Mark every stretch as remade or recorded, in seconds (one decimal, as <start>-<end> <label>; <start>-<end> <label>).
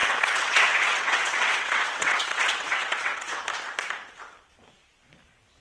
0.0-3.4 remade; 3.4-5.6 recorded